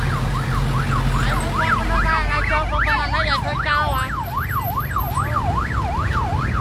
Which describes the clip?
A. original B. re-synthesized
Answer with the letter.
A